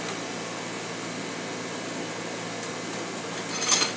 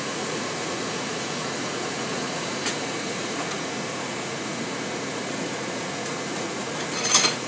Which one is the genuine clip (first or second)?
first